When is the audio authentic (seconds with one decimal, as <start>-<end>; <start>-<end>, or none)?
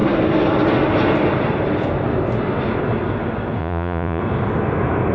0.0-3.6; 4.2-5.1